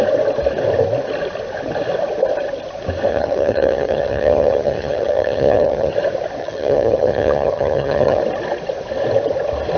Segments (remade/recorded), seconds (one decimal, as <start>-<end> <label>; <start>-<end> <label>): 0.0-3.1 recorded; 3.1-5.9 remade; 5.9-6.4 recorded; 6.4-8.2 remade; 8.2-9.8 recorded